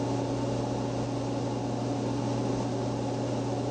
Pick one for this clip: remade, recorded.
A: recorded